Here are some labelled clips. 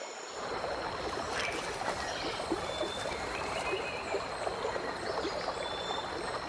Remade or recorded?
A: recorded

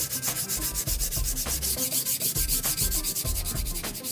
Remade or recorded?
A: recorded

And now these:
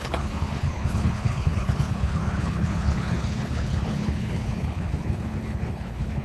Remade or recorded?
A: remade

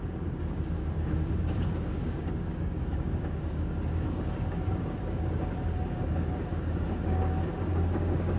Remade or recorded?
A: remade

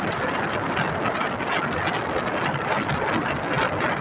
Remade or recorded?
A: recorded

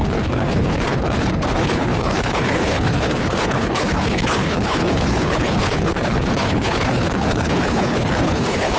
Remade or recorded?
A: remade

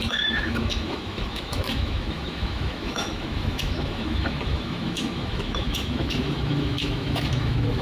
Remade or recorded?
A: remade